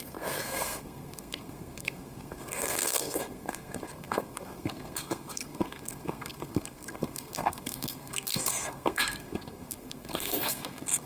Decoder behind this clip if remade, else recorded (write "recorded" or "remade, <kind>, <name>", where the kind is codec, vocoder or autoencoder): remade, codec, SNAC